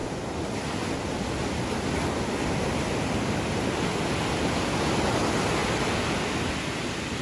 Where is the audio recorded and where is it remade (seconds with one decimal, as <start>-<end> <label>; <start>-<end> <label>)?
0.0-7.2 recorded